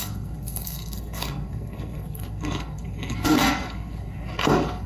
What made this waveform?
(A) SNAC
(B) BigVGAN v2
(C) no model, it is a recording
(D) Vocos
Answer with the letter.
A